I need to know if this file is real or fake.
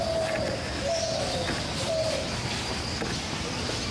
real